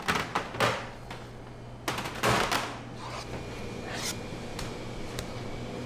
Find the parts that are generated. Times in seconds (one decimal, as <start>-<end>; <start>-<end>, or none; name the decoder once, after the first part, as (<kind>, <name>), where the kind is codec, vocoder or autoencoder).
4.5-5.9 (vocoder, BigVGAN v2)